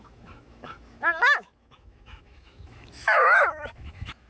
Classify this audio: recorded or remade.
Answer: remade